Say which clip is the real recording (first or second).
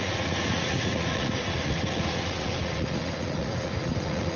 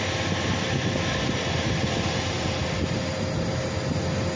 second